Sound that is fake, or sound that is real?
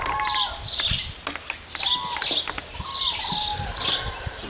real